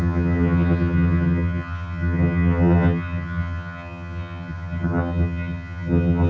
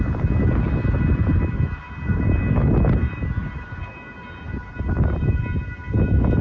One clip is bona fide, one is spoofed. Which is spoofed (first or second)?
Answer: first